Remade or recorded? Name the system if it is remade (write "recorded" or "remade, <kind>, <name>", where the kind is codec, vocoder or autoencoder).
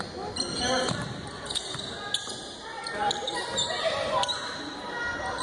recorded